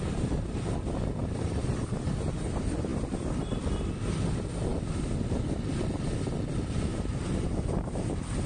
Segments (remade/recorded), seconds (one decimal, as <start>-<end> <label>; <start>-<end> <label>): 0.0-1.2 recorded; 1.2-1.9 remade; 1.9-6.9 recorded; 6.9-8.5 remade